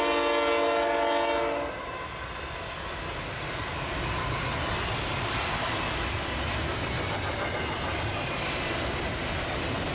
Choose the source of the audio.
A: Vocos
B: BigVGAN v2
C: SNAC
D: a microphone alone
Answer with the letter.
D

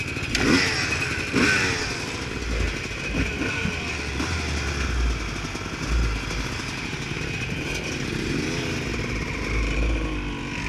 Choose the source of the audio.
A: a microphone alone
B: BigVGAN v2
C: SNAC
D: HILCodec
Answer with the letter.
A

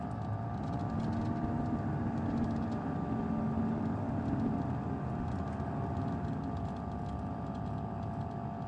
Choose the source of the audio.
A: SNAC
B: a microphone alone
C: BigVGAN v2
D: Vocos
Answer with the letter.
B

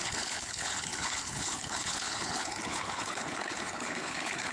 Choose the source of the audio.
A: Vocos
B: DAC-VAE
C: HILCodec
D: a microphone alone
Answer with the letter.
C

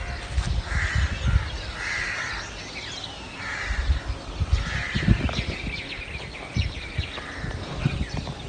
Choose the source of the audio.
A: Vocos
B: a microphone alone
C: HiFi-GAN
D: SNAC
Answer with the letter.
B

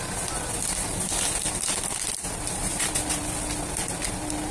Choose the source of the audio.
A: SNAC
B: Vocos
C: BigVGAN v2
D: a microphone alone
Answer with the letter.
D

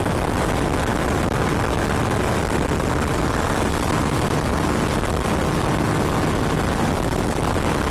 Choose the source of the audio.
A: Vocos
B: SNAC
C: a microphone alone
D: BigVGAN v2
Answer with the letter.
C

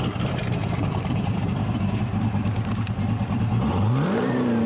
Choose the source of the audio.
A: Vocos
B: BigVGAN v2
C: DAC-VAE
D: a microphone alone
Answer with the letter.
B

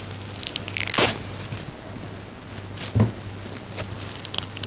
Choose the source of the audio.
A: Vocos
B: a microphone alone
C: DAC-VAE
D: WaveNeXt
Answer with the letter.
B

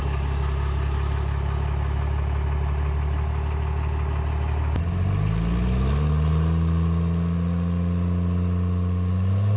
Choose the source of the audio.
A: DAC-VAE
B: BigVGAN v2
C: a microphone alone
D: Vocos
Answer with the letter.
C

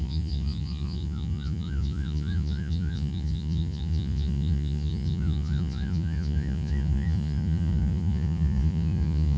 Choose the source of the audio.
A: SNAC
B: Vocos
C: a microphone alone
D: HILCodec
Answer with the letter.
B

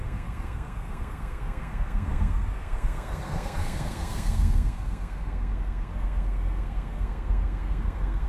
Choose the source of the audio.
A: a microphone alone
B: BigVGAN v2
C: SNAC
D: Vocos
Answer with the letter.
C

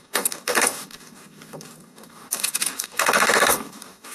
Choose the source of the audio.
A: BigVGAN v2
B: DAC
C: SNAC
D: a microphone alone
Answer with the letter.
B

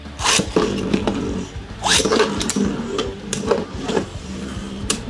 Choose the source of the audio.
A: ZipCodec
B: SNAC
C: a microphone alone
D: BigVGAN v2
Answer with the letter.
D